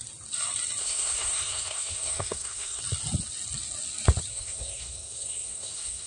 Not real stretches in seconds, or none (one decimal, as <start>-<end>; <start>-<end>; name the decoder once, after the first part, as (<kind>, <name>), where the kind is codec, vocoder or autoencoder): 0.8-2.8 (codec, SNAC); 4.3-6.1